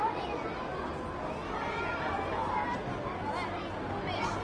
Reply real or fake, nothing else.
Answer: real